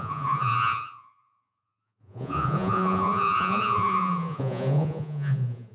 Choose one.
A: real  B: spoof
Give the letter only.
B